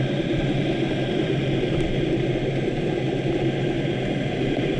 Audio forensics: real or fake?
real